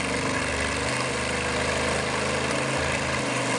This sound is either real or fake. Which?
real